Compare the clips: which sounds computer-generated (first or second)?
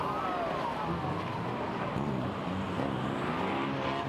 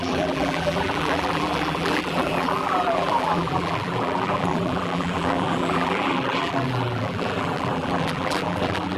second